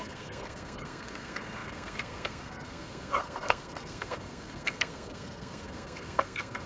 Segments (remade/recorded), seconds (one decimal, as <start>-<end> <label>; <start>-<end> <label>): 0.0-6.7 remade